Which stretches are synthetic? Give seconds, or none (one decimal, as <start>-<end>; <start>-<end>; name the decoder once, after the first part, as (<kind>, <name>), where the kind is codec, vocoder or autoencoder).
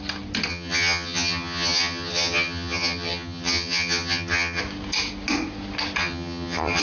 0.5-4.6 (vocoder, HiFi-GAN); 6.0-6.8